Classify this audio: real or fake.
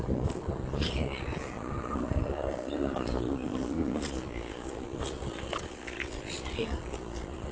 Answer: fake